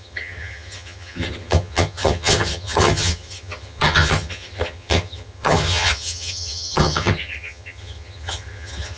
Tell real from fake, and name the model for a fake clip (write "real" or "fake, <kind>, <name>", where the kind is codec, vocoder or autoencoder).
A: fake, vocoder, HiFi-GAN